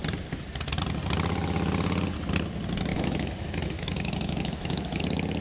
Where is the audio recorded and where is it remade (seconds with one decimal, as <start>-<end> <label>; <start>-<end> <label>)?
0.0-2.9 recorded; 2.9-5.0 remade; 5.0-5.4 recorded